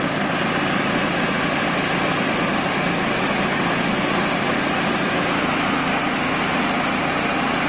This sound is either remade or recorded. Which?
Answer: recorded